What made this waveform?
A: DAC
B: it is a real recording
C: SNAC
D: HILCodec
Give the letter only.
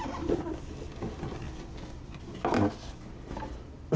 B